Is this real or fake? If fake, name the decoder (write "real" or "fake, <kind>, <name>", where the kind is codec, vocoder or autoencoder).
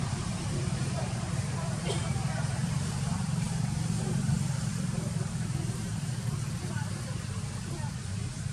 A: fake, vocoder, BigVGAN v2